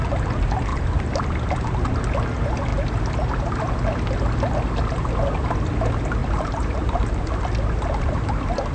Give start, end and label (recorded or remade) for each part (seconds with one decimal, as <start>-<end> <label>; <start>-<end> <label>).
0.0-0.7 recorded; 0.7-1.5 remade; 1.5-6.2 recorded; 6.2-7.3 remade; 7.3-8.7 recorded